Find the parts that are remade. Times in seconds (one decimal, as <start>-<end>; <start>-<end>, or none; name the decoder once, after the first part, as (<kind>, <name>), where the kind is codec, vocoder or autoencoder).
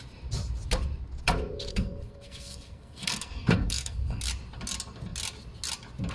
1.7-4.2 (codec, SNAC)